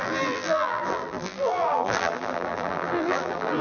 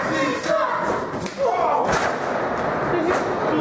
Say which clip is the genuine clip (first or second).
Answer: second